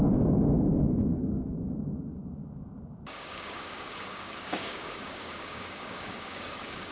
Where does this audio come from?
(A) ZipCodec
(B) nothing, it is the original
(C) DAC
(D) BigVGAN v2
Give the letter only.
C